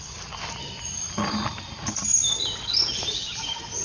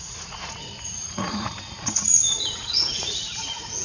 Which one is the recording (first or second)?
first